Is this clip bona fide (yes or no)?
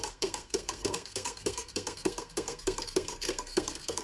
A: no